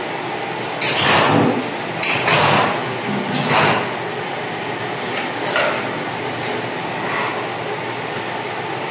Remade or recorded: recorded